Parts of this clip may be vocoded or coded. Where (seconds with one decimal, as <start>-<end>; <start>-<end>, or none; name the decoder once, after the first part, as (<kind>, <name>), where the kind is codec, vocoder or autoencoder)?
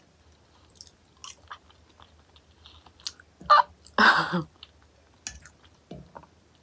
none